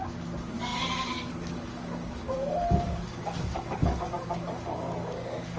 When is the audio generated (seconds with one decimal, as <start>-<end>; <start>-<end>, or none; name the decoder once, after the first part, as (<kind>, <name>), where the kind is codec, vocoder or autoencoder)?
0.0-5.6 (codec, DAC)